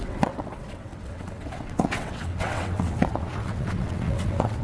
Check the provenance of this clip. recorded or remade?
remade